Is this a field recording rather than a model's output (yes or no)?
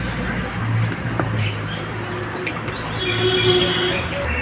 yes